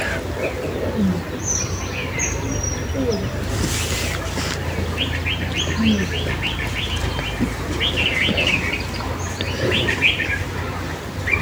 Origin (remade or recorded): recorded